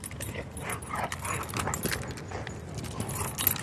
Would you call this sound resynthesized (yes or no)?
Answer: no